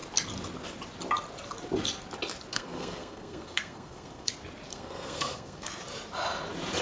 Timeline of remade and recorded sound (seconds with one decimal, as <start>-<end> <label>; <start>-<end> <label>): 0.0-2.5 recorded; 2.5-4.3 remade; 4.3-4.7 recorded; 4.7-5.7 remade; 5.7-6.8 recorded